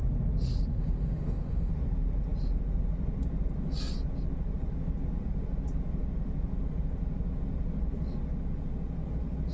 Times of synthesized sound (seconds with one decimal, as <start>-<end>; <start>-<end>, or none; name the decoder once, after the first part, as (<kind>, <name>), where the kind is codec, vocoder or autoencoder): 0.7-1.7 (autoencoder, DAC-VAE)